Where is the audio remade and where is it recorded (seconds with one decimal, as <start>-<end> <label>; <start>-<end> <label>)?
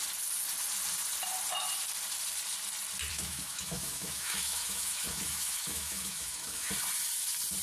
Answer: 0.0-3.1 recorded; 3.1-6.7 remade; 6.7-7.6 recorded